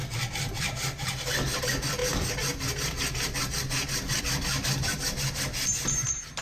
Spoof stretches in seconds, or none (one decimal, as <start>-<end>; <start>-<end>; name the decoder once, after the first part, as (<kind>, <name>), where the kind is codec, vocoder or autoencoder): none